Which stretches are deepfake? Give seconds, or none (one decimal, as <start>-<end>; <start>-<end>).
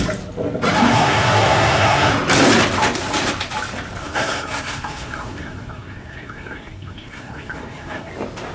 0.8-2.1; 4.0-8.1